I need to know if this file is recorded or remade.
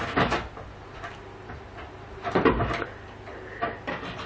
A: recorded